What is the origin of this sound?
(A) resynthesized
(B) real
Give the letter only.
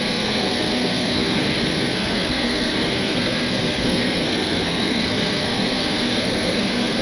A